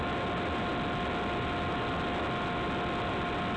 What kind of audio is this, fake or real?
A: real